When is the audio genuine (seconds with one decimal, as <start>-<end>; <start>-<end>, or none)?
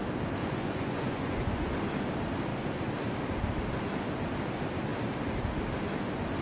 0.0-0.4; 1.7-6.4